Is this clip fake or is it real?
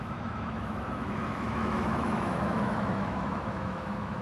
fake